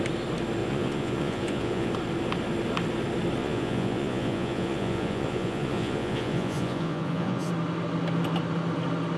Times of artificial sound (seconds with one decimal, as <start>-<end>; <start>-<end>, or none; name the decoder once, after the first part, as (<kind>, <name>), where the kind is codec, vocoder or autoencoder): 0.6-1.9 (vocoder, Vocos); 3.4-7.5